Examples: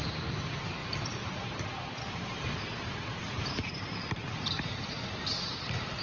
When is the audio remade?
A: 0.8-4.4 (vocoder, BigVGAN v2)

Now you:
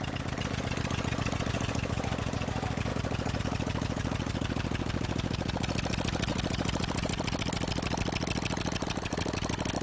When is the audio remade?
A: 6.3-7.4 (vocoder, BigVGAN v2)

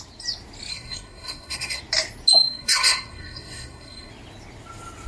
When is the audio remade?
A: 0.7-1.8 (codec, SNAC); 2.3-4.1

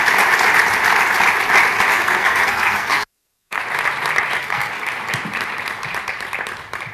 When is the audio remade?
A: 1.9-3.6 (codec, SNAC); 4.4-4.9